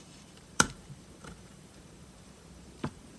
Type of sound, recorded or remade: remade